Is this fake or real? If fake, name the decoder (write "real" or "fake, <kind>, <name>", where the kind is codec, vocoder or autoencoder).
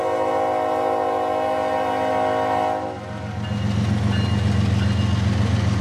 real